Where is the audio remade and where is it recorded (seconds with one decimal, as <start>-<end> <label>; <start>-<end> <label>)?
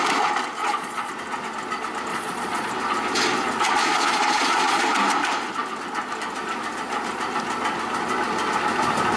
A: 0.0-0.6 recorded; 0.6-1.1 remade; 1.1-2.1 recorded; 2.1-2.7 remade; 2.7-3.8 recorded; 3.8-4.8 remade; 4.8-9.2 recorded